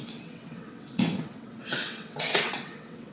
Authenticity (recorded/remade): remade